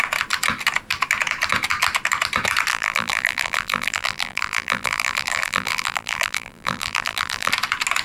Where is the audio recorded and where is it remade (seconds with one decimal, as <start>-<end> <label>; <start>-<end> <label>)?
0.0-2.7 recorded; 2.7-7.5 remade; 7.5-8.0 recorded

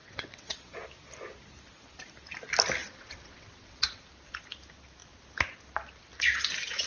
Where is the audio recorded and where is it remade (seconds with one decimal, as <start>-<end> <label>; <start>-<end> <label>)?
0.0-0.8 remade; 0.8-2.8 recorded; 2.8-4.1 remade; 4.1-6.9 recorded

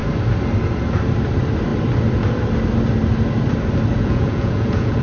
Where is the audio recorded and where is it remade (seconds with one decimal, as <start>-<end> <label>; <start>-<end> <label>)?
0.0-3.9 recorded; 3.9-5.0 remade

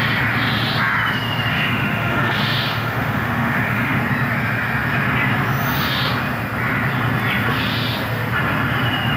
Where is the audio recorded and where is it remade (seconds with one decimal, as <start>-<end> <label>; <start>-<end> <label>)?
0.0-1.5 recorded; 1.5-4.0 remade; 4.0-9.2 recorded

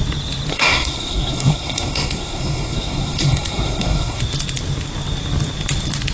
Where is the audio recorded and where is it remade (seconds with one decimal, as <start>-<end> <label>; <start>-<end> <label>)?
0.0-0.5 recorded; 0.5-4.2 remade; 4.2-6.1 recorded

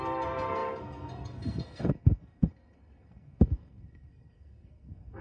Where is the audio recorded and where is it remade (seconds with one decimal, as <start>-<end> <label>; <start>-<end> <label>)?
0.0-5.2 remade